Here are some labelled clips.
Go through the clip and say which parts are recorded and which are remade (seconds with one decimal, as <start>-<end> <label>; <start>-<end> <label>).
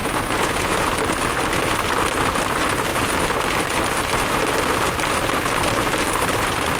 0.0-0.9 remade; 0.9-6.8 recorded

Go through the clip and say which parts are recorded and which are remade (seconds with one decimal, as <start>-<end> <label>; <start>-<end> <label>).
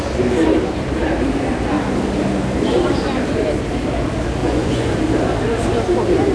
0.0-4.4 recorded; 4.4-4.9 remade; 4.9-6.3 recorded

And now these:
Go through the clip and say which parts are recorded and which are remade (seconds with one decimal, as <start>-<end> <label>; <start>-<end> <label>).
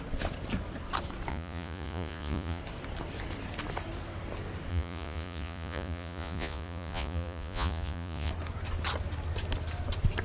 0.0-1.3 recorded; 1.3-2.6 remade; 2.6-4.7 recorded; 4.7-8.3 remade; 8.3-10.2 recorded